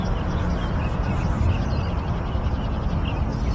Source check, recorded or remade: recorded